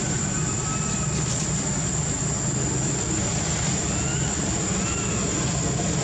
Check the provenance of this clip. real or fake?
real